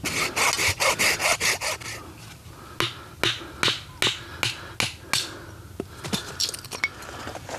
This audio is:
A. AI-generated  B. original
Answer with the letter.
B